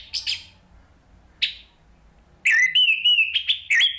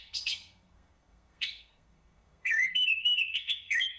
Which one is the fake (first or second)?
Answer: second